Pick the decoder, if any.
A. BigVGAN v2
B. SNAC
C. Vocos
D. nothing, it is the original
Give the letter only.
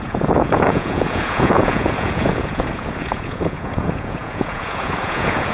C